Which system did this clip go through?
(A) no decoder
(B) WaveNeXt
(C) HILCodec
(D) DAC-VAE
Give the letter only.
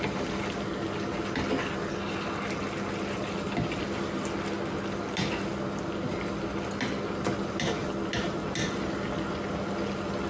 A